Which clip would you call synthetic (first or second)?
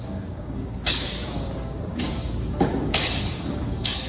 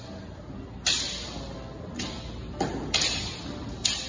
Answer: first